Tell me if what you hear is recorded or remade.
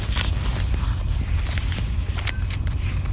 recorded